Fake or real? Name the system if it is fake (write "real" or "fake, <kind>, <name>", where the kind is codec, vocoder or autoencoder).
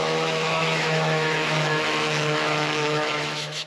fake, autoencoder, DAC-VAE